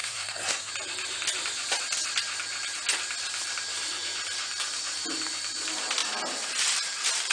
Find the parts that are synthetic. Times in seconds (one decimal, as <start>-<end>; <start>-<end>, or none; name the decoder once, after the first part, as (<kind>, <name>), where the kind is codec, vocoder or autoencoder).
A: 0.0-0.7 (codec, SNAC)